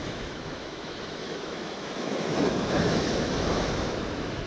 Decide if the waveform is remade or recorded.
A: remade